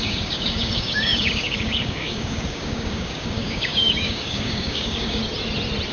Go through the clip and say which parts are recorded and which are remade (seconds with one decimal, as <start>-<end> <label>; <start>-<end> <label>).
0.0-5.2 remade; 5.2-5.9 recorded